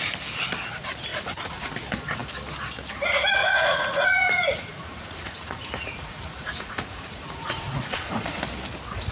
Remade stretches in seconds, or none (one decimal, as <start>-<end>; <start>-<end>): 1.1-1.7; 3.4-8.4